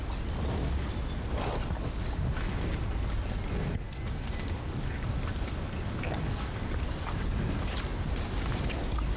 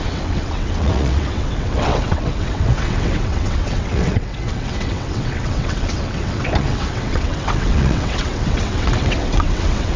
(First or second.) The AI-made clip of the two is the second